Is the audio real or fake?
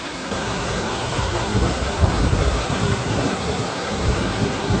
fake